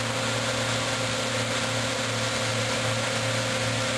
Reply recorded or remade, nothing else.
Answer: recorded